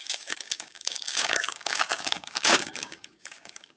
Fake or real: fake